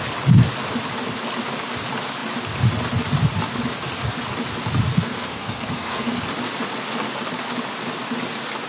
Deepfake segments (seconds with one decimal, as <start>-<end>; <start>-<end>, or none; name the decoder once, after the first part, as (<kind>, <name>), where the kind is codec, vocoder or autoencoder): 4.9-6.2 (codec, SNAC)